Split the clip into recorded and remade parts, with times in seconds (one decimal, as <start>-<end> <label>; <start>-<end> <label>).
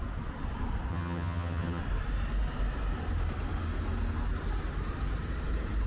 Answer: 0.0-0.9 recorded; 0.9-1.8 remade; 1.8-5.9 recorded